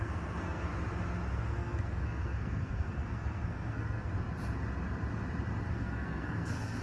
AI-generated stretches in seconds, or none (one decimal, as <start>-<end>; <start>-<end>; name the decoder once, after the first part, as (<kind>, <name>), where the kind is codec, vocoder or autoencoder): 0.0-0.7 (codec, SNAC); 1.3-4.1; 5.7-6.8